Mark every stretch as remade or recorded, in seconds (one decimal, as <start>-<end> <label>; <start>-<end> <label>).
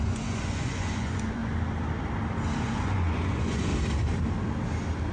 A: 0.0-1.4 remade; 1.4-2.6 recorded; 2.6-3.7 remade; 3.7-5.1 recorded